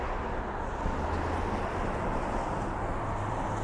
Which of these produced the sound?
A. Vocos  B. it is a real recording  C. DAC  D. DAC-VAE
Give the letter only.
B